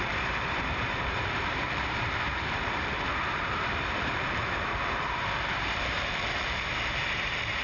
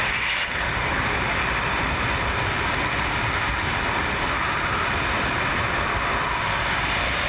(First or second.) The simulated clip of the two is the first